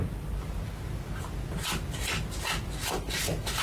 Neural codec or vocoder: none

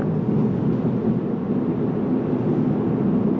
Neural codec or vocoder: none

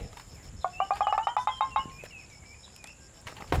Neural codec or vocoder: none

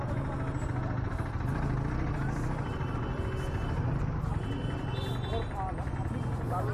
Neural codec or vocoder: none